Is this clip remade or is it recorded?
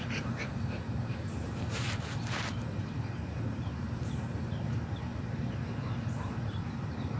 remade